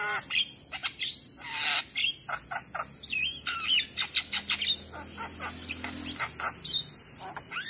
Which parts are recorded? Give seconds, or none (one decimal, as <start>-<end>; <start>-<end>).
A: 0.0-7.7